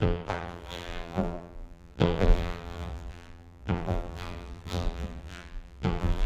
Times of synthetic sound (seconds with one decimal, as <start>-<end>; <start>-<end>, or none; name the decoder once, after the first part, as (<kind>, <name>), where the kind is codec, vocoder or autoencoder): 0.0-6.3 (vocoder, BigVGAN v2)